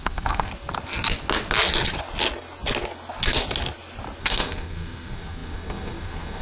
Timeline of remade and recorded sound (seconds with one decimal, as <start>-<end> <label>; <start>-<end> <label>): 0.0-0.5 remade; 0.5-4.2 recorded; 4.2-6.4 remade